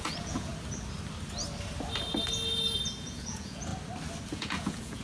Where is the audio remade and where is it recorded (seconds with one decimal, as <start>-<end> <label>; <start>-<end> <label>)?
0.0-0.5 remade; 0.5-3.0 recorded; 3.0-3.7 remade; 3.7-4.3 recorded; 4.3-5.0 remade